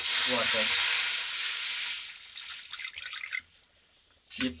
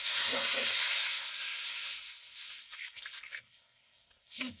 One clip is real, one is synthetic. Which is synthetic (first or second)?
second